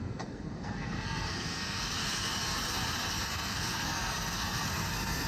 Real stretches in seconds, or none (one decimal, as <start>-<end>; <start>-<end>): 2.0-3.1